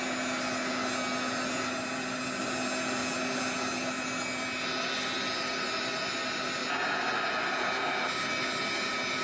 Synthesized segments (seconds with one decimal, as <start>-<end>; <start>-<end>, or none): none